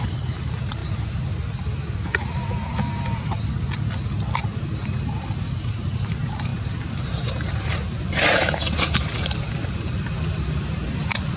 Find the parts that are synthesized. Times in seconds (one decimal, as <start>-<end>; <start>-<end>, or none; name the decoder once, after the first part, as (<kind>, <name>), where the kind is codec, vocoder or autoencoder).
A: 0.0-0.8 (vocoder, BigVGAN v2); 5.0-11.4